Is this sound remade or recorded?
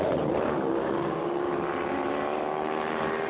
recorded